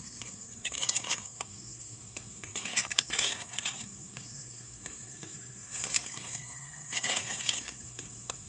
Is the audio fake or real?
fake